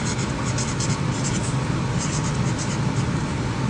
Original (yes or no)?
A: yes